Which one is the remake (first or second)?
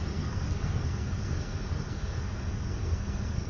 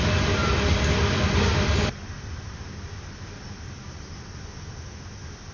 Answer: first